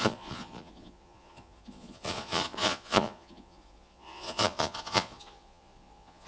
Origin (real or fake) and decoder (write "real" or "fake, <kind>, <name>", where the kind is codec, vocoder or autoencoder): fake, vocoder, Vocos